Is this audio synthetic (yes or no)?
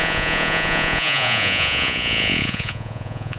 yes